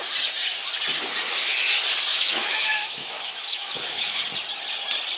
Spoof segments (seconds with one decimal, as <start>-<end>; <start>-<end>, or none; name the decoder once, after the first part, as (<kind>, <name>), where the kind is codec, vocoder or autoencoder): 2.1-4.2 (autoencoder, DAC-VAE)